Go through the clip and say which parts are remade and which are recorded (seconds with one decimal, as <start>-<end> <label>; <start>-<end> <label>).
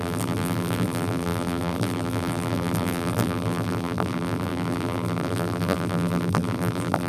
0.0-7.1 remade